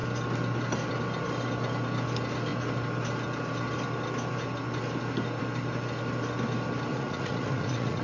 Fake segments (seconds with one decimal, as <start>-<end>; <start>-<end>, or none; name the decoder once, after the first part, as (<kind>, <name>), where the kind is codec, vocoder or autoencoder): 6.9-8.0 (vocoder, Vocos)